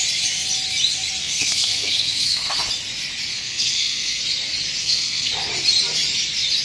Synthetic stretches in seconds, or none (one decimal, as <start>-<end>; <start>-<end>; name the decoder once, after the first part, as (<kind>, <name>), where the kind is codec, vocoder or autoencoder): 1.2-2.5 (codec, SNAC); 3.3-4.2; 4.8-5.3

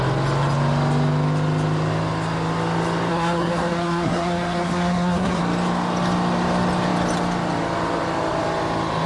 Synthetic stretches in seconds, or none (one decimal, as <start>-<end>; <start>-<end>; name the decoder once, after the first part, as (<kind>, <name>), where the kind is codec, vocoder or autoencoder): 3.1-5.4 (codec, SNAC)

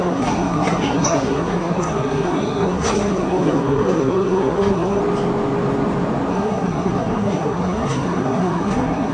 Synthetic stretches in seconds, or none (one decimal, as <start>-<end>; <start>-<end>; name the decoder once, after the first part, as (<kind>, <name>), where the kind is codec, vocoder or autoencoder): 0.0-5.0 (codec, SNAC); 6.3-9.1

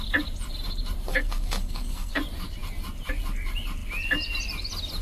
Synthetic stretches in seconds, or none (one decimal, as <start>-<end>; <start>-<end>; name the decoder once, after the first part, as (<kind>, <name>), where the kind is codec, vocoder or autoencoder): 1.1-2.2 (codec, SNAC)

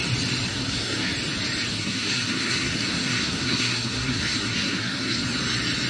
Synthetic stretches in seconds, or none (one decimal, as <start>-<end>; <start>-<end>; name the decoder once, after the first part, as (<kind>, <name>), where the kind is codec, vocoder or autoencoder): 0.5-1.1 (codec, SNAC); 1.7-5.2